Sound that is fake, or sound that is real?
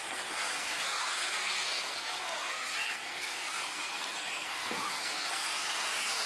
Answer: fake